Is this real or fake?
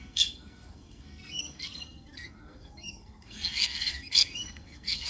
fake